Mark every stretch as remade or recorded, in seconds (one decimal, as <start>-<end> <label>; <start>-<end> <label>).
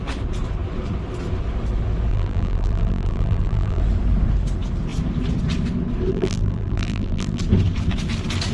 0.0-2.1 recorded; 2.1-3.8 remade; 3.8-6.1 recorded; 6.1-7.4 remade; 7.4-8.5 recorded